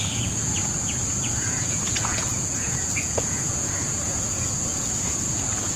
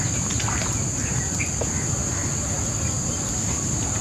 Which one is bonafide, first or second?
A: second